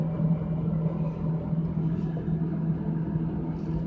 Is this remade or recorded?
recorded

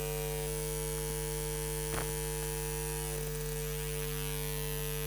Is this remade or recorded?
recorded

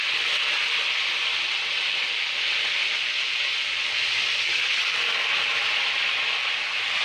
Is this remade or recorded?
recorded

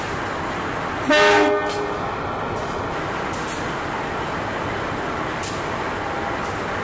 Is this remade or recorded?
recorded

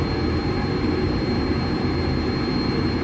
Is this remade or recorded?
remade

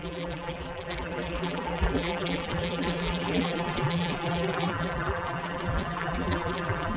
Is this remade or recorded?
remade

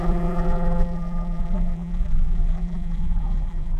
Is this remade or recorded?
remade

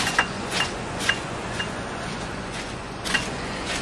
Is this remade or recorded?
remade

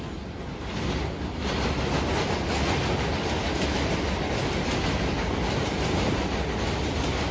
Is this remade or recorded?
recorded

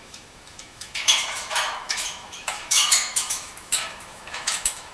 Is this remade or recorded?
remade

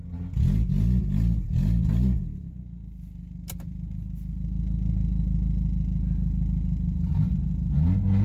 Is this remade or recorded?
recorded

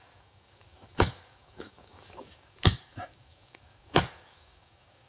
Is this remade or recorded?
remade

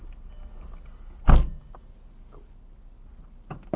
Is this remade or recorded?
recorded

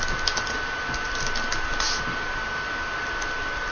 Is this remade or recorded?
recorded